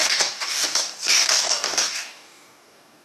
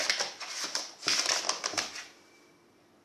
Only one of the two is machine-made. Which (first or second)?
first